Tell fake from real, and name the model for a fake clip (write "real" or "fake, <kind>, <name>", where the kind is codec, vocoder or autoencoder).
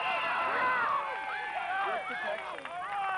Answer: real